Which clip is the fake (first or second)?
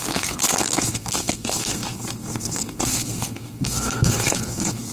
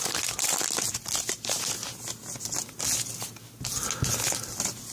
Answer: first